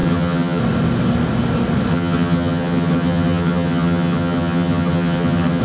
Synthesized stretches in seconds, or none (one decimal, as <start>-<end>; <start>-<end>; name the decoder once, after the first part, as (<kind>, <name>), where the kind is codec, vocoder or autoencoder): 0.0-0.6 (vocoder, HiFi-GAN); 1.9-5.6